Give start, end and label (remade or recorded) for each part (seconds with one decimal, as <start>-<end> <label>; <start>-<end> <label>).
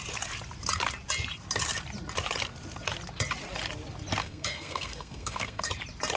0.0-4.2 recorded; 4.2-5.7 remade; 5.7-6.2 recorded